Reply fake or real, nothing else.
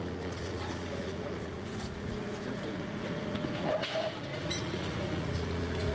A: fake